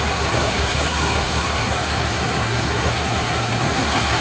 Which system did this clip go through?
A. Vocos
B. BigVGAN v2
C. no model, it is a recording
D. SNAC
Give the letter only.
D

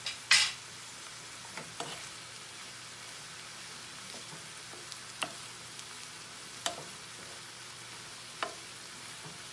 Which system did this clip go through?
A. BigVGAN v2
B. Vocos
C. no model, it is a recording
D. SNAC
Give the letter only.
C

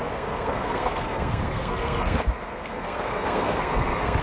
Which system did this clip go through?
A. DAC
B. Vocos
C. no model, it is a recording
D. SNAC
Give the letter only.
D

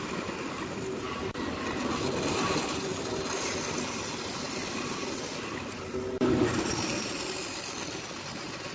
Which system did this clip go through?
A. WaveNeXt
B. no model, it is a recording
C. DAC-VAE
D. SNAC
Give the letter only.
B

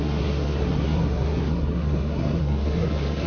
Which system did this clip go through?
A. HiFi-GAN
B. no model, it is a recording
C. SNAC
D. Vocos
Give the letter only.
C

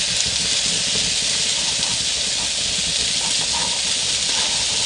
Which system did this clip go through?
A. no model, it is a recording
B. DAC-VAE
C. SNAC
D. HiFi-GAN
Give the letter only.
A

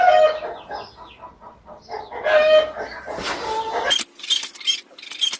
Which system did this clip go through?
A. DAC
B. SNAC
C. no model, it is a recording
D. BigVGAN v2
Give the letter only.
C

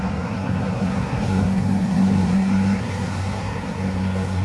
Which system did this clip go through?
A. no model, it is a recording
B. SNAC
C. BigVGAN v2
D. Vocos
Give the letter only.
B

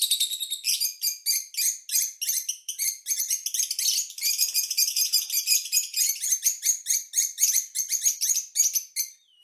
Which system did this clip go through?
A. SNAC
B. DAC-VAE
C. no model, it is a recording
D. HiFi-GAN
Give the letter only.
C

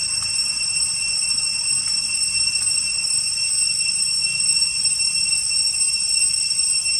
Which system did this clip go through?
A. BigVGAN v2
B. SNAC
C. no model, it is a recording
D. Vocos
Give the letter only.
C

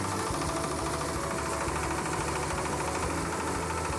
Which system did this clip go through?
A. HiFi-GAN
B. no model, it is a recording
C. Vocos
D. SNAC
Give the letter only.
B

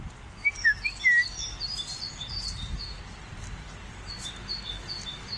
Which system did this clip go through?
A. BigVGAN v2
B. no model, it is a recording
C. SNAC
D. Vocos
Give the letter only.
B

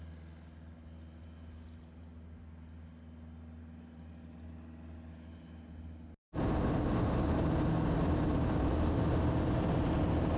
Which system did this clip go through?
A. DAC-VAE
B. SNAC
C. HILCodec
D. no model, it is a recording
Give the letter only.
D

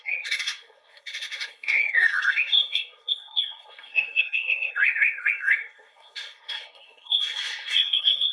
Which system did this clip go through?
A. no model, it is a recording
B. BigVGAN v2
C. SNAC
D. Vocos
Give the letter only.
C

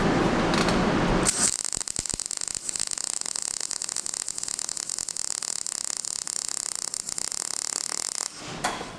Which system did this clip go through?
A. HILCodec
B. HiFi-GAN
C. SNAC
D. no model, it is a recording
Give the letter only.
D